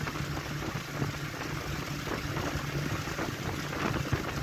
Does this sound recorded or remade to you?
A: recorded